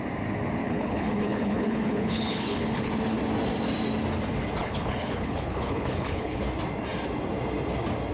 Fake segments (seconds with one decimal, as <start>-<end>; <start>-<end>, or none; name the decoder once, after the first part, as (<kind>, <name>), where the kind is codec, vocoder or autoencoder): 0.6-2.9 (codec, HILCodec); 4.6-6.4